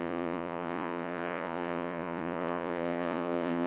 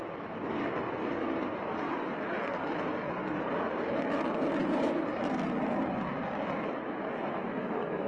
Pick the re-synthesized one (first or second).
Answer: first